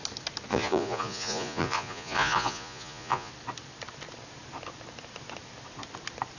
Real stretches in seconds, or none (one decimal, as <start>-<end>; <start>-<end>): 0.0-0.5; 3.3-6.4